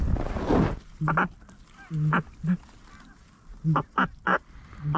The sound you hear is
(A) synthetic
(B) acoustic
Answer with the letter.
B